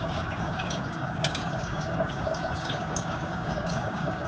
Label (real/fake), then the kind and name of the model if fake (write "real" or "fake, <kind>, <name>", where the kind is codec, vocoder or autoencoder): fake, codec, DAC